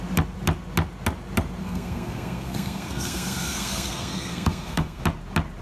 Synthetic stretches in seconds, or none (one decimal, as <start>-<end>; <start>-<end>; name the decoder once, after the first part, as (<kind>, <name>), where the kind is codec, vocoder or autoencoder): 1.6-5.0 (codec, SNAC)